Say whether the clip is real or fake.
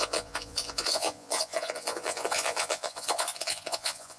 fake